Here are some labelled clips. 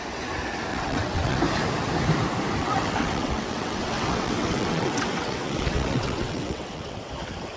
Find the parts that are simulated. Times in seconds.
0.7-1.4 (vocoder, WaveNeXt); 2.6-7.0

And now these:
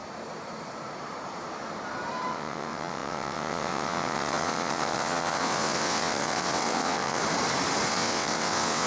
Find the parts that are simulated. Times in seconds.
2.3-7.2 (vocoder, WaveNeXt); 7.9-8.9

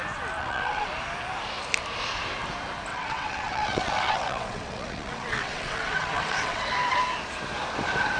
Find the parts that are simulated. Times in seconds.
0.4-0.9 (vocoder, WaveNeXt); 2.9-6.7

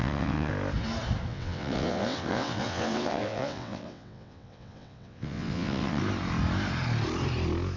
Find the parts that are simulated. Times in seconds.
0.0-0.5 (vocoder, WaveNeXt); 1.3-6.0